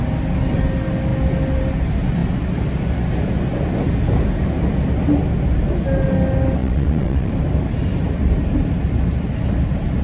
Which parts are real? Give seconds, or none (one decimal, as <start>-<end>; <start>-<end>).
0.0-6.6; 7.3-10.0